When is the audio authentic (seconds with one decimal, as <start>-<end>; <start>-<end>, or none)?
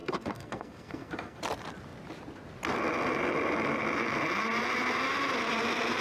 1.4-6.0